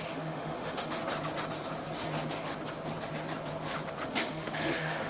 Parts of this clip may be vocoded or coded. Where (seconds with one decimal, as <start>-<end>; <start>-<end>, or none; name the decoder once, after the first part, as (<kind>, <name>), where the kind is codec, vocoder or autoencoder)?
0.0-1.0 (autoencoder, DAC-VAE); 4.1-5.1